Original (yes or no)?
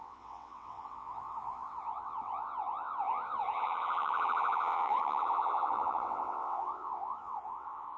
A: no